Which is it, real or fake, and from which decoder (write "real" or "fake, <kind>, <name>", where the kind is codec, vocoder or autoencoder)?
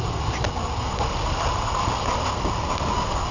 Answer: real